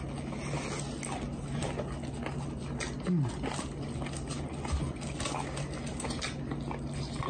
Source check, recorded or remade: recorded